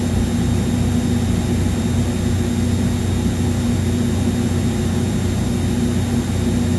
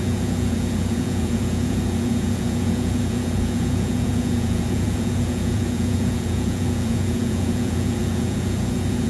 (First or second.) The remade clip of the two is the second